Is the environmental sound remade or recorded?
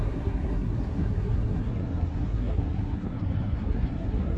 remade